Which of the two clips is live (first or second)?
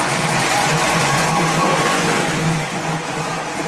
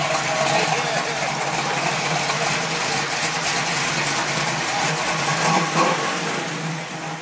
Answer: second